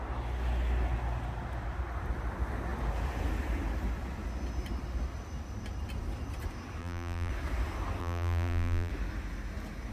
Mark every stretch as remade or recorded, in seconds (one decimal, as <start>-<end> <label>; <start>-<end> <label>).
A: 0.0-6.8 recorded; 6.8-7.3 remade; 7.3-8.0 recorded; 8.0-8.9 remade; 8.9-9.9 recorded